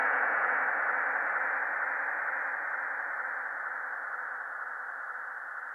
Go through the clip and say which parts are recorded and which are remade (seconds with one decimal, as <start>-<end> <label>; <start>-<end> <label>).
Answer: 0.0-0.6 remade; 0.6-5.7 recorded